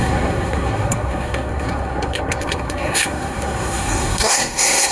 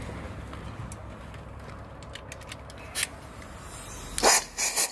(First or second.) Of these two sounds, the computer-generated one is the first